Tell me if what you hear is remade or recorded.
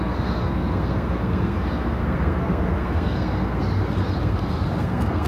remade